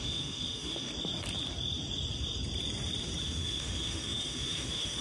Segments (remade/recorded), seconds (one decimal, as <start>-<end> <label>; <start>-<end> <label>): 0.0-0.9 remade; 0.9-3.2 recorded; 3.2-5.0 remade